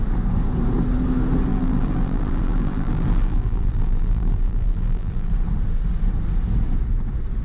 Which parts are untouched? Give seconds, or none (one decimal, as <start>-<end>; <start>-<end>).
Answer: 0.0-1.5; 5.3-7.4